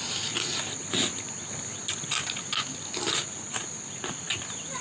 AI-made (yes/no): no